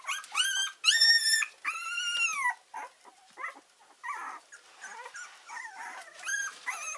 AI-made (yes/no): no